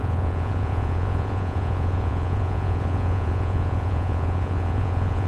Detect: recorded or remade remade